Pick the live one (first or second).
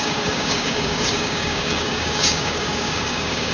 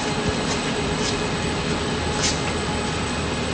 second